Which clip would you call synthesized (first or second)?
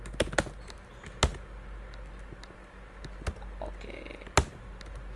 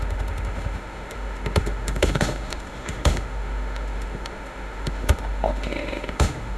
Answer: second